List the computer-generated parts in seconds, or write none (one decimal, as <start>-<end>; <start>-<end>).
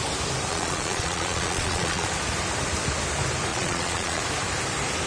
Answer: 0.5-2.1; 3.5-4.2